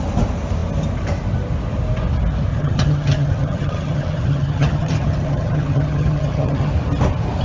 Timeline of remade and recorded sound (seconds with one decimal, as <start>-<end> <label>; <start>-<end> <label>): 0.0-2.5 recorded; 2.5-6.7 remade; 6.7-7.4 recorded

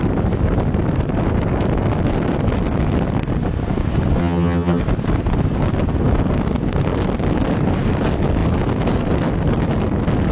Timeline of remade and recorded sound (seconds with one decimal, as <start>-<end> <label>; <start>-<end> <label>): 0.0-4.2 recorded; 4.2-4.8 remade; 4.8-10.3 recorded